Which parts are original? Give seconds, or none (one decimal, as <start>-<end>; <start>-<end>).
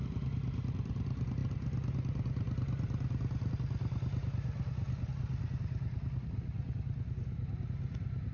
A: 0.0-8.3